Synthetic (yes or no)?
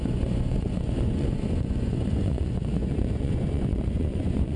yes